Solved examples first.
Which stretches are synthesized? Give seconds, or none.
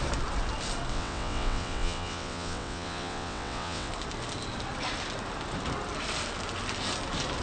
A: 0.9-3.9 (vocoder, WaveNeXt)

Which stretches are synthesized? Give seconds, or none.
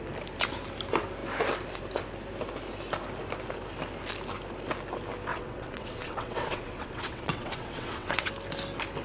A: 5.3-8.3 (vocoder, WaveNeXt)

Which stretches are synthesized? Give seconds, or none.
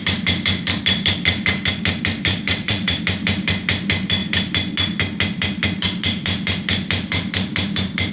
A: 2.3-3.0 (vocoder, WaveNeXt)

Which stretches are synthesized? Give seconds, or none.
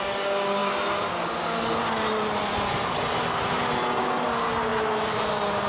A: none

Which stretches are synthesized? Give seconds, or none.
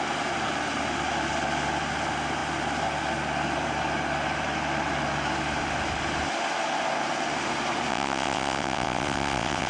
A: 7.9-9.7 (vocoder, WaveNeXt)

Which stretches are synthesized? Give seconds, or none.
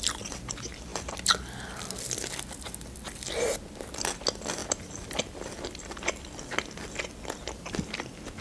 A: none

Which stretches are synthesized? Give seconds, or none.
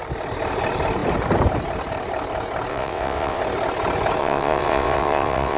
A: 2.7-3.4 (vocoder, WaveNeXt); 4.2-5.6